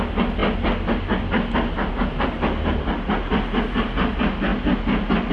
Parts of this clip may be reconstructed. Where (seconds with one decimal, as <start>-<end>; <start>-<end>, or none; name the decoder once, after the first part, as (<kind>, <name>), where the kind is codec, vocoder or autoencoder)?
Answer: none